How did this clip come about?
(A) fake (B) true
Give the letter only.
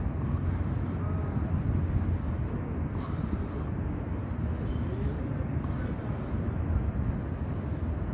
B